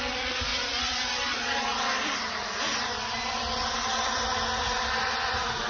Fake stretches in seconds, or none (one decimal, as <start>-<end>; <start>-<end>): none